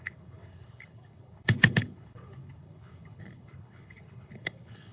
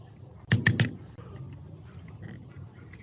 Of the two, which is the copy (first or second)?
first